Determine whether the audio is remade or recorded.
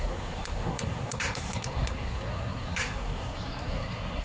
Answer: remade